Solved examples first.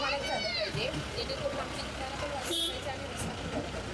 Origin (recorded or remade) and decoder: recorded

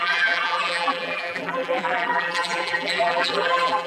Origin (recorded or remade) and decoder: remade, vocoder, BigVGAN v2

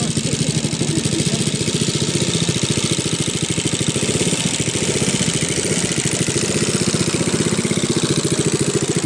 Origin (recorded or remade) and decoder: recorded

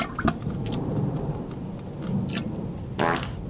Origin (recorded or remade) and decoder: recorded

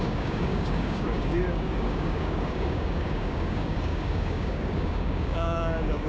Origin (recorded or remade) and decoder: remade, codec, DAC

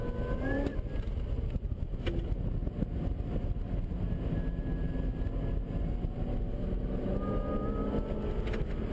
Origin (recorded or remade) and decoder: recorded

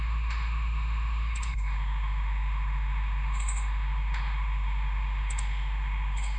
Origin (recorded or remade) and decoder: remade, autoencoder, DAC-VAE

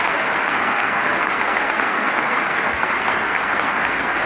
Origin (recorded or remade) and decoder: remade, codec, SNAC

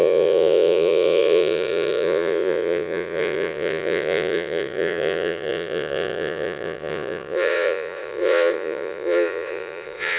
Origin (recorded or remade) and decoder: remade, vocoder, Vocos